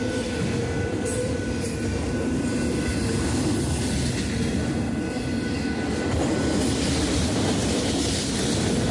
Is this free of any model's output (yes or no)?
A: yes